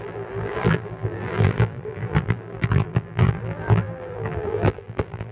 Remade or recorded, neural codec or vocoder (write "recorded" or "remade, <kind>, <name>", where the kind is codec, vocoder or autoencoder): remade, vocoder, BigVGAN v2